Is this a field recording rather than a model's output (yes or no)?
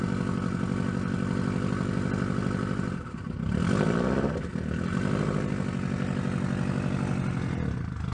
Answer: yes